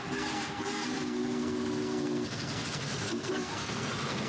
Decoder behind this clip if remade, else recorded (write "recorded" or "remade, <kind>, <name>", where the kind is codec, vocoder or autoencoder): remade, codec, SNAC